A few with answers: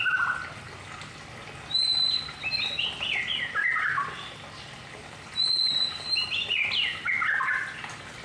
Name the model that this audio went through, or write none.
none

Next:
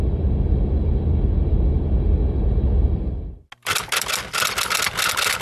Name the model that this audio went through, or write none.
none